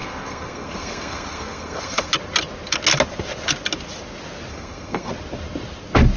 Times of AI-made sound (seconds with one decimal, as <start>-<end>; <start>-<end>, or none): 0.0-2.1; 4.5-5.1